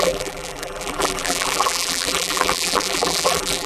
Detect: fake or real fake